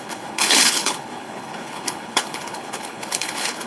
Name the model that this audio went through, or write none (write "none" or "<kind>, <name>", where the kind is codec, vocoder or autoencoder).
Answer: codec, HILCodec